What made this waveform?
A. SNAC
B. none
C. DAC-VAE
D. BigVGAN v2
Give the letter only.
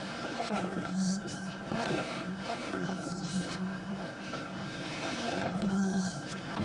A